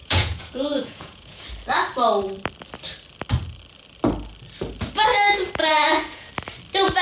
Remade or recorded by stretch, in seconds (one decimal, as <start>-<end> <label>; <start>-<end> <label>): 0.0-1.4 remade; 1.4-5.6 recorded; 5.6-6.3 remade; 6.3-7.0 recorded